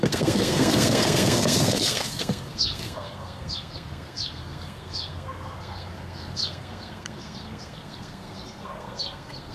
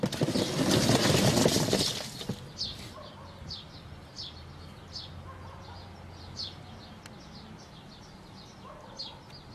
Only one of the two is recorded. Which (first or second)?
second